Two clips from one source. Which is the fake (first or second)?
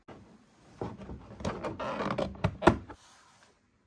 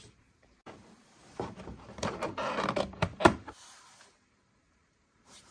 second